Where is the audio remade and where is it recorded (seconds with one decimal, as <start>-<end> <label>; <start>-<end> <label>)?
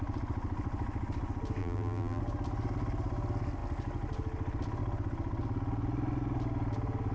0.0-1.6 recorded; 1.6-2.2 remade; 2.2-7.1 recorded